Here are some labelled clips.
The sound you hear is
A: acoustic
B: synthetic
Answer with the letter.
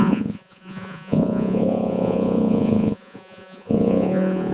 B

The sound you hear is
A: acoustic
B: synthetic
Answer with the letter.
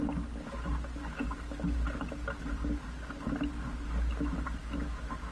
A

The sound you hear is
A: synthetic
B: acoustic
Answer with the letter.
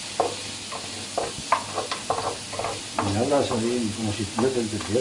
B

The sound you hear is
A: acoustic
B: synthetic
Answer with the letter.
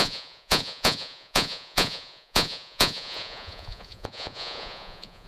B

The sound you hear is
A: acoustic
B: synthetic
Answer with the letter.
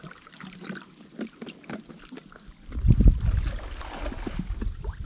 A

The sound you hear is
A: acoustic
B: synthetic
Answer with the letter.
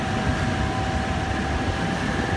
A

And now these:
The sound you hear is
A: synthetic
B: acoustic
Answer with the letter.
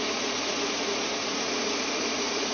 A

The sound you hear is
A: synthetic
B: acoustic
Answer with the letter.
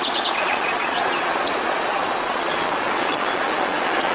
A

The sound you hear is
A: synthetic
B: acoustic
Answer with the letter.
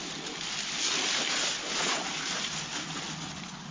B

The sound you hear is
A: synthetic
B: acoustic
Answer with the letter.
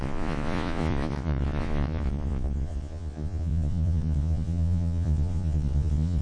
A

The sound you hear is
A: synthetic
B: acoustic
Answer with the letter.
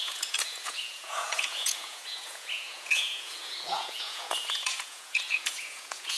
A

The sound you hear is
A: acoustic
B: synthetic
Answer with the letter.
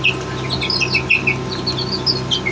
A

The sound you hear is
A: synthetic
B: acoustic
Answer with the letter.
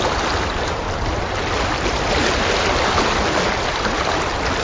B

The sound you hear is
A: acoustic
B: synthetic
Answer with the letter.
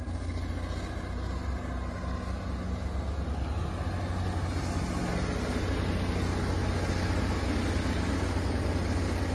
A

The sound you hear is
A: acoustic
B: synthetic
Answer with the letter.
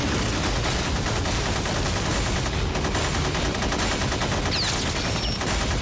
A